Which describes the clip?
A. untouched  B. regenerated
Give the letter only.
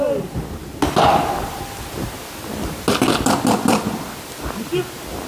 A